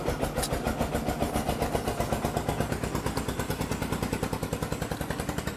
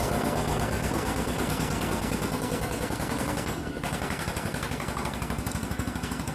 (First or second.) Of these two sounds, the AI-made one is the second